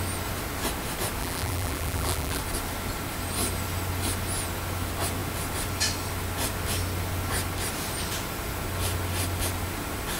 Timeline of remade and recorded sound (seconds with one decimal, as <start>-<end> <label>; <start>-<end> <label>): 0.0-1.2 recorded; 1.2-2.4 remade; 2.4-10.2 recorded